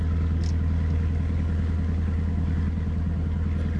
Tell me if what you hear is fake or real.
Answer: real